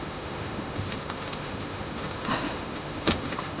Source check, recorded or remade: remade